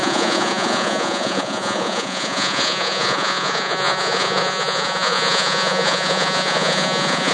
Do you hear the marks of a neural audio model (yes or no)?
yes